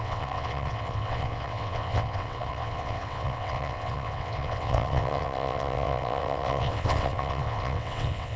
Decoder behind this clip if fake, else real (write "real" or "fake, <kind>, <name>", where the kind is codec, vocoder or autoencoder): fake, vocoder, WaveNeXt